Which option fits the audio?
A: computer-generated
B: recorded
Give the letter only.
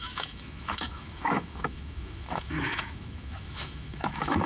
A